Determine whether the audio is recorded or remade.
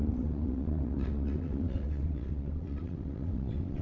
remade